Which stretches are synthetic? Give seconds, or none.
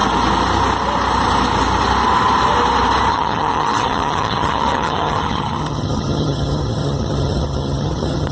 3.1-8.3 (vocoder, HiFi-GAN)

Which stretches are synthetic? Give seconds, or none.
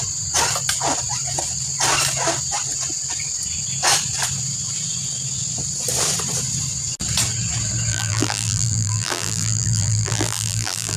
7.9-11.0 (vocoder, BigVGAN v2)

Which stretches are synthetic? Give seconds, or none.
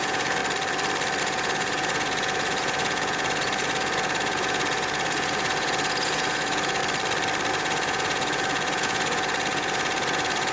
0.0-0.4 (vocoder, Vocos); 1.2-6.8; 7.5-10.5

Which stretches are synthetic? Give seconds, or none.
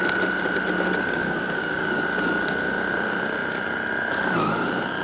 1.2-2.0 (codec, DAC)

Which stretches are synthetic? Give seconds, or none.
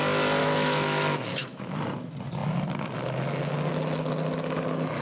0.4-1.8 (autoencoder, DAC-VAE)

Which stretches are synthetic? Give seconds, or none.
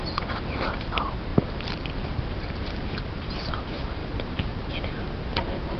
1.3-2.9 (vocoder, BigVGAN v2); 4.0-4.5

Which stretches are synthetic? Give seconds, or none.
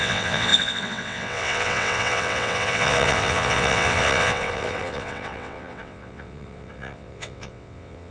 0.0-8.1 (vocoder, WaveNeXt)